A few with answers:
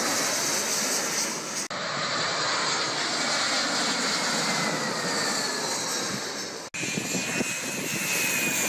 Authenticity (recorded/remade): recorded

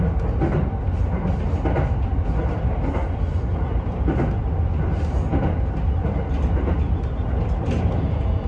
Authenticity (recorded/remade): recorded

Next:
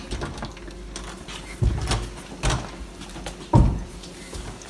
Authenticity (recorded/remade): recorded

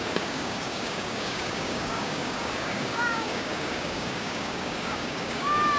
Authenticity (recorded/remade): remade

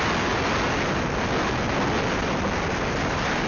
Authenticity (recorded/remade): recorded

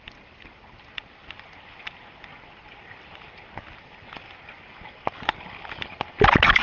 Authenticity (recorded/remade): recorded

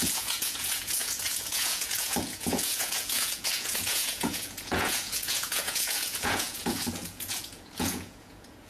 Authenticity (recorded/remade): remade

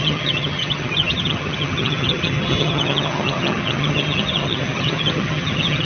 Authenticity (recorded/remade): remade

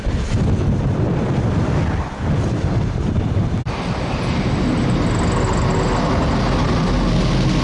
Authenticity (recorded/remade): recorded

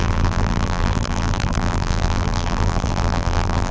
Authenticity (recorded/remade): remade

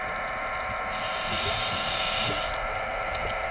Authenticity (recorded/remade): recorded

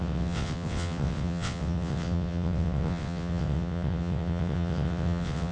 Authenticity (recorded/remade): remade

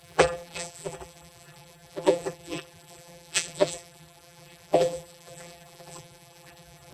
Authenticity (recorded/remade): remade